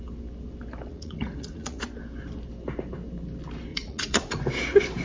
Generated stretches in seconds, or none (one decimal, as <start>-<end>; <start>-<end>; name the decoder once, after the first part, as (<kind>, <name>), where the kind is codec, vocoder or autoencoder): 0.9-1.8 (vocoder, Vocos); 3.7-4.4